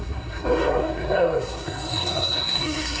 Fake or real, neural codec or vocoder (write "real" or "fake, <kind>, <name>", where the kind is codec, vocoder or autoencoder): fake, codec, SNAC